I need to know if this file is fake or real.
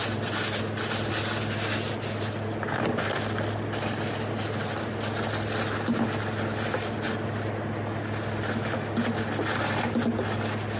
real